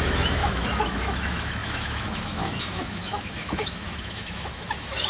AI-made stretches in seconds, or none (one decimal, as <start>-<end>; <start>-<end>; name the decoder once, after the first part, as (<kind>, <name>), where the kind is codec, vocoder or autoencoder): 0.0-5.1 (autoencoder, DAC-VAE)